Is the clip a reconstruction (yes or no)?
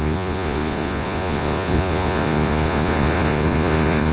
yes